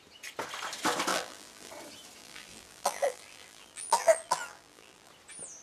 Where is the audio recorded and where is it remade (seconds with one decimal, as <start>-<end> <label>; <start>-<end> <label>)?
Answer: 0.0-1.1 recorded; 1.1-1.7 remade; 1.7-2.2 recorded; 2.2-5.1 remade; 5.1-5.6 recorded